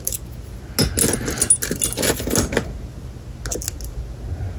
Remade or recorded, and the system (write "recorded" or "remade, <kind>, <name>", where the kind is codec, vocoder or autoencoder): recorded